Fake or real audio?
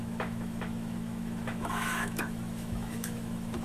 fake